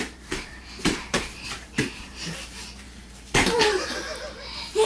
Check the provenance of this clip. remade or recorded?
remade